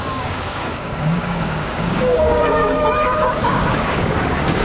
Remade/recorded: remade